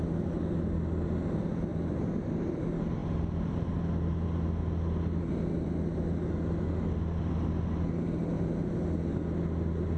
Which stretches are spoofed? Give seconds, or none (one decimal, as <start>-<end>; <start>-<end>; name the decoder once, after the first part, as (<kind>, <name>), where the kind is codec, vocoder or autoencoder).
none